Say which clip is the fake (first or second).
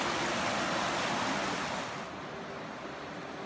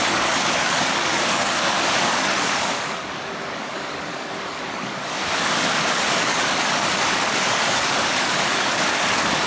second